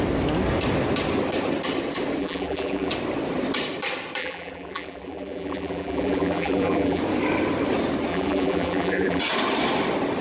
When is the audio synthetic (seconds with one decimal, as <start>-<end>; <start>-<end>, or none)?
2.2-2.9; 4.2-7.0; 8.1-9.2